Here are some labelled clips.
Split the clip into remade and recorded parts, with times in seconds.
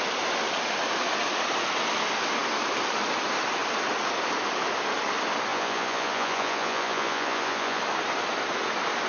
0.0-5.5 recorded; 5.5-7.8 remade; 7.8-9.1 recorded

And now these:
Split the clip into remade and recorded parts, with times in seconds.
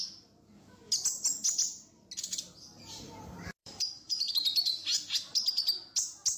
0.0-3.6 recorded; 3.6-4.3 remade; 4.3-6.4 recorded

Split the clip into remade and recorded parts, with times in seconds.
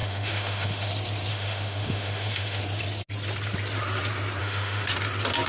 0.0-0.9 remade; 0.9-1.3 recorded; 1.3-2.6 remade; 2.6-4.4 recorded; 4.4-4.9 remade; 4.9-5.5 recorded